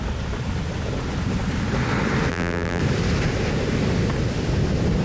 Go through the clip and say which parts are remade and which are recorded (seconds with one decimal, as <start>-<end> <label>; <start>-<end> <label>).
0.0-2.3 recorded; 2.3-2.8 remade; 2.8-5.0 recorded